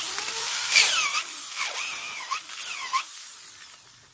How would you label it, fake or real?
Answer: real